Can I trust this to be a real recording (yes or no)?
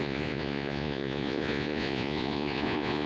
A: no